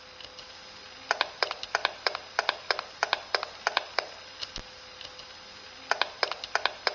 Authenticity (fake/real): real